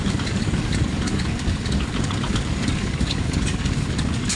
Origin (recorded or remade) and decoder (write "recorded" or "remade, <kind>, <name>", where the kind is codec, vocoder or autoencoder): remade, codec, DAC